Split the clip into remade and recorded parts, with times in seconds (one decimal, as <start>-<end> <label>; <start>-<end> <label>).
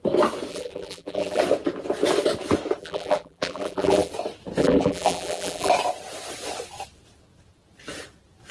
0.0-0.5 recorded; 0.5-1.4 remade; 1.4-2.8 recorded; 2.8-4.1 remade; 4.1-4.6 recorded; 4.6-5.7 remade; 5.7-8.5 recorded